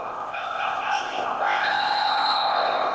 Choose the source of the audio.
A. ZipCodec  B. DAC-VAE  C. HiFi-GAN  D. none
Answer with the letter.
A